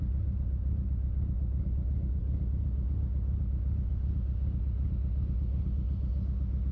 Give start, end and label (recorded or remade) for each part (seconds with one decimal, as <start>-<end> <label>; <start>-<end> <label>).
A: 0.0-6.7 recorded